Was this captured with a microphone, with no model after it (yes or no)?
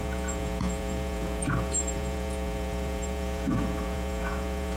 no